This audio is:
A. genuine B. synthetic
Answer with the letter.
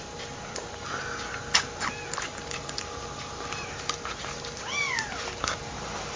A